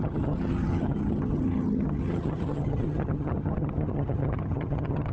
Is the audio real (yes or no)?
no